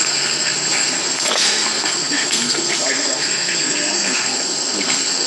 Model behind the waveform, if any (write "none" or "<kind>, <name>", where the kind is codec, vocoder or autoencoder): codec, SNAC